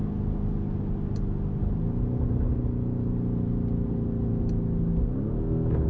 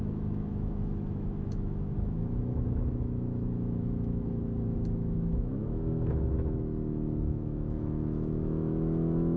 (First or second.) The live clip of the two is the first